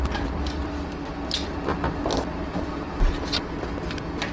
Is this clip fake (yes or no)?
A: no